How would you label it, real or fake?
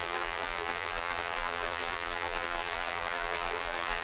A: fake